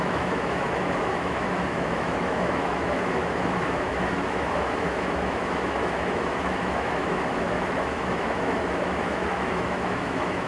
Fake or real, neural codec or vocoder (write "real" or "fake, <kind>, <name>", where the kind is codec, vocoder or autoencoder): fake, autoencoder, DAC-VAE